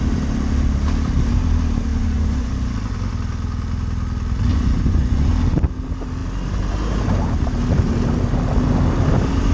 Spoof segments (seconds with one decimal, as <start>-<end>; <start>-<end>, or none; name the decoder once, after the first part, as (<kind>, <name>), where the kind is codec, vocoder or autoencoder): 1.9-2.5 (vocoder, Vocos); 4.5-5.3